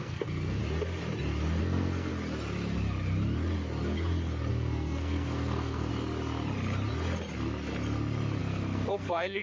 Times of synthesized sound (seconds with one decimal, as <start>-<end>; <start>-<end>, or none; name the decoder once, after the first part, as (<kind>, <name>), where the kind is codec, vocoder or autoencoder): 0.0-0.6 (codec, SNAC); 1.6-2.1; 4.5-5.9; 8.4-9.4